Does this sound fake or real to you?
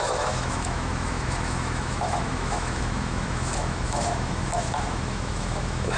fake